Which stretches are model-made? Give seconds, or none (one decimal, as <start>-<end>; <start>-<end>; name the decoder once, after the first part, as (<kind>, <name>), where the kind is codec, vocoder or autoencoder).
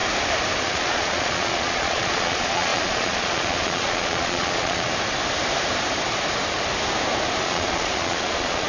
0.6-4.9 (vocoder, Vocos); 7.4-8.7